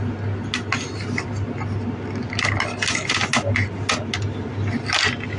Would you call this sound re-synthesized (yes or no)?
no